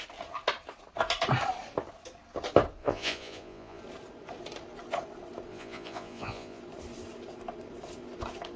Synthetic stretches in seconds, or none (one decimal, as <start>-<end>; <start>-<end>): 2.8-3.8; 5.5-6.6